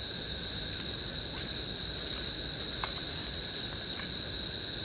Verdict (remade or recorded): recorded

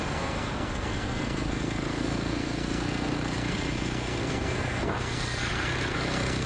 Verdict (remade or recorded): remade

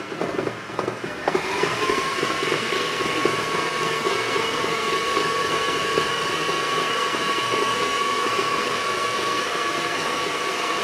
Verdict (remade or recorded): remade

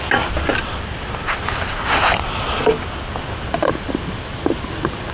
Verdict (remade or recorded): recorded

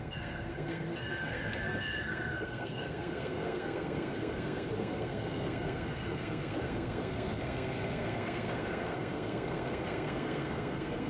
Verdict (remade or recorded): remade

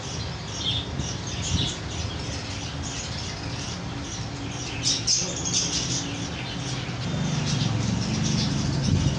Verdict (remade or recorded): recorded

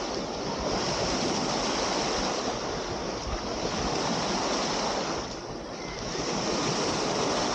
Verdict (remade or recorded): recorded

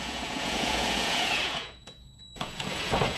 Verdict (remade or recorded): remade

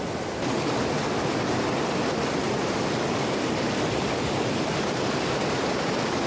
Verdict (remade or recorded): recorded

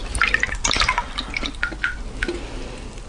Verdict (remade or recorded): recorded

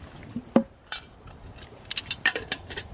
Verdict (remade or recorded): recorded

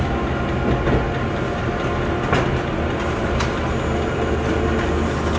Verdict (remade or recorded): recorded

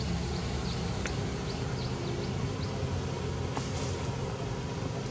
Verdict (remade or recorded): recorded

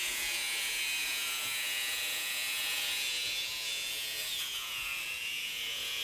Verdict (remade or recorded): remade